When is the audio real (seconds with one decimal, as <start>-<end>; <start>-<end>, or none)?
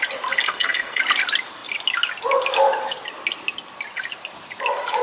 0.0-0.4; 1.0-5.0